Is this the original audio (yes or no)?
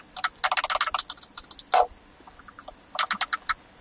yes